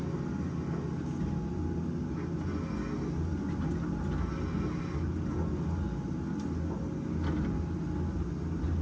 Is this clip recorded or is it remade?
recorded